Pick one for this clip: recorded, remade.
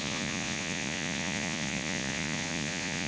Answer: remade